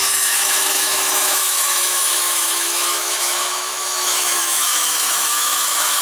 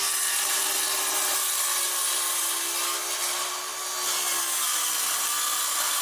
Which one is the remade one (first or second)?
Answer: first